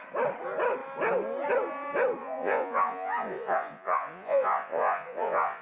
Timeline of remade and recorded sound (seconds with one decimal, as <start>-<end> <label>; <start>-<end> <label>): 0.0-2.2 recorded; 2.2-5.6 remade